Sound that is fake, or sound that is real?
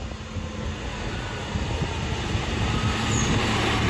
real